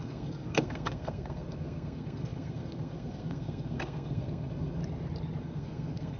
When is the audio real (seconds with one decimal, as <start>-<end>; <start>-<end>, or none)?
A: 4.8-5.4